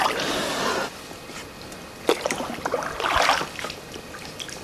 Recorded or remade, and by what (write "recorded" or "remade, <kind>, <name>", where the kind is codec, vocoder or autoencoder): recorded